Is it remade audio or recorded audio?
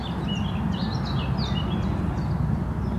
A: recorded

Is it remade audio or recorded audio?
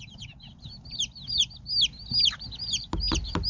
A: recorded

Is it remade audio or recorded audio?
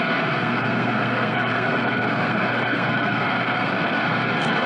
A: remade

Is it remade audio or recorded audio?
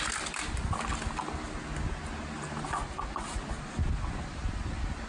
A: recorded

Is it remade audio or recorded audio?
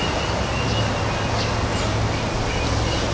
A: recorded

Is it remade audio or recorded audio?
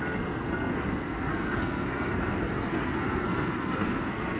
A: remade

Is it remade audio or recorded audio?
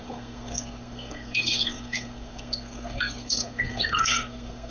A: remade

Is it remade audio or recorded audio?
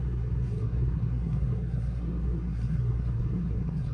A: remade